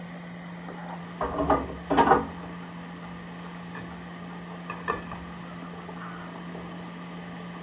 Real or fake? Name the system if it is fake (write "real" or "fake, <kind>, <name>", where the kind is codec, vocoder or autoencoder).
real